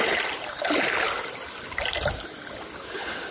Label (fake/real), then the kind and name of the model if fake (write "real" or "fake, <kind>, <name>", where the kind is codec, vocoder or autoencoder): real